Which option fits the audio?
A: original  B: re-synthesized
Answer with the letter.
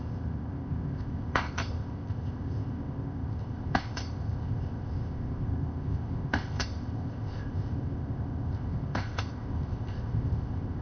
B